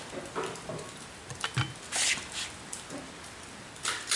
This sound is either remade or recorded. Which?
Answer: recorded